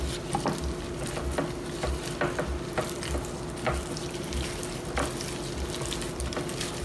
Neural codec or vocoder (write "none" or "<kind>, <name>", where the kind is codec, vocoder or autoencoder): none